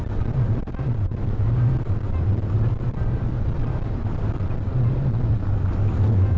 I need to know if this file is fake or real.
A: real